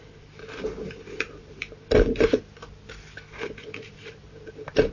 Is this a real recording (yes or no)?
yes